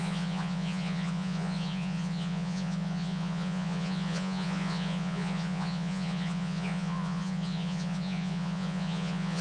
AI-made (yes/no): yes